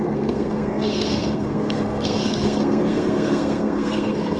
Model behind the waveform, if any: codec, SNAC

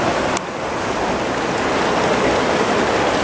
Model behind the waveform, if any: none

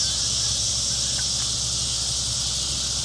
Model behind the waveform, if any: none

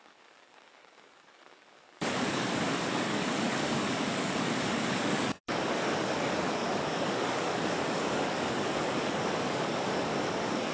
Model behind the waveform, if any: codec, DAC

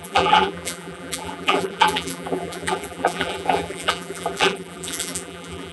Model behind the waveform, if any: vocoder, BigVGAN v2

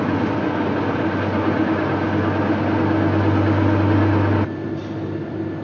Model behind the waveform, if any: none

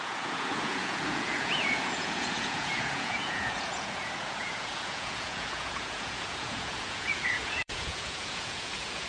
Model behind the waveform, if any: vocoder, Vocos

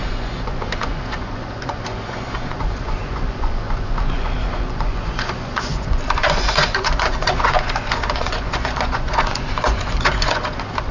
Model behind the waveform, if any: vocoder, Vocos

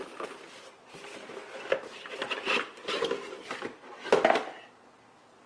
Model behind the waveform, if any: none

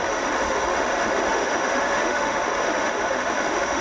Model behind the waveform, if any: autoencoder, DAC-VAE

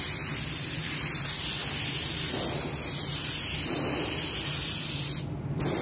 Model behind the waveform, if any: none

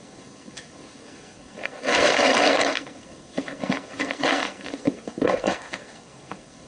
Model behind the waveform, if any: codec, SNAC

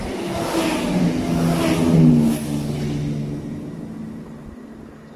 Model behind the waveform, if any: none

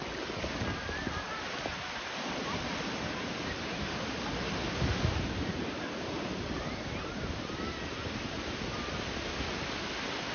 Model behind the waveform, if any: none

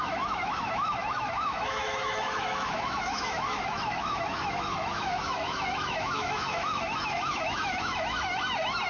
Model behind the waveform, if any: autoencoder, DAC-VAE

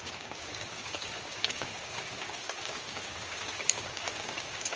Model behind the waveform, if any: codec, DAC